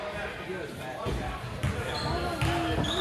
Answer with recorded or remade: recorded